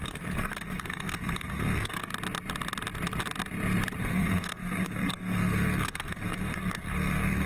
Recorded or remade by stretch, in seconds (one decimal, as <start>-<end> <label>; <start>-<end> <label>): 0.0-2.1 remade; 2.1-4.0 recorded; 4.0-7.5 remade

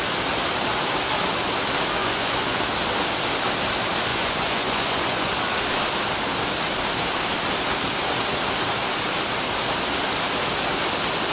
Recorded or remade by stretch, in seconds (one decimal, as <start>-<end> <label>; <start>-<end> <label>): 0.0-2.0 recorded; 2.0-2.6 remade; 2.6-4.1 recorded; 4.1-5.3 remade; 5.3-11.3 recorded